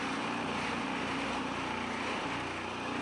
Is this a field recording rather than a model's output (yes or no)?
yes